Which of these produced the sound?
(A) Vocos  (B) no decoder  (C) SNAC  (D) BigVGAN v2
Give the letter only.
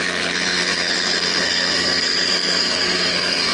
C